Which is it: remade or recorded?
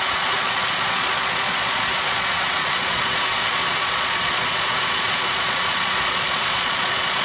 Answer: remade